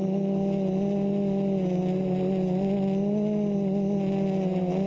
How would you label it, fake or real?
real